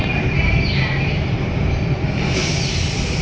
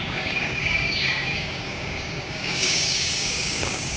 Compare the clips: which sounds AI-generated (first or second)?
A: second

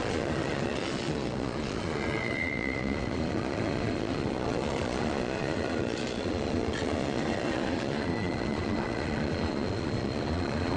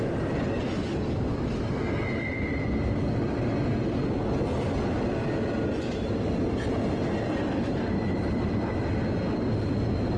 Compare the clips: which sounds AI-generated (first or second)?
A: first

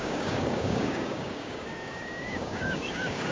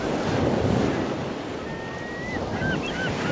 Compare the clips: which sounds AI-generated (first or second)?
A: first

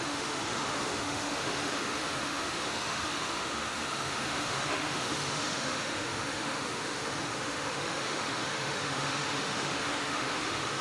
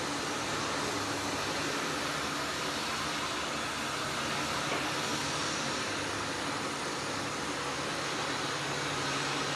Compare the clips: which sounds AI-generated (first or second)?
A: first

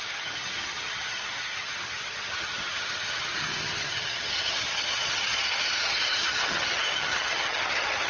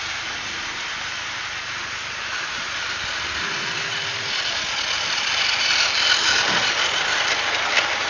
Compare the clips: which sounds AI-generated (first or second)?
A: first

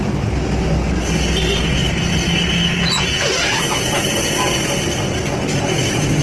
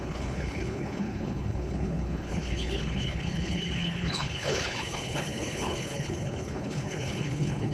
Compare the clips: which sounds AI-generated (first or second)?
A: second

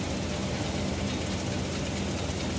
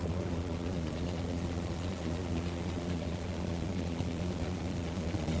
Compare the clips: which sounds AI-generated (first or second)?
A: second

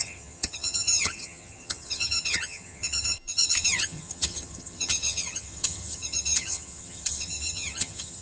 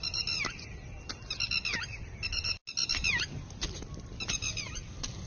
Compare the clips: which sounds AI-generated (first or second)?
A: first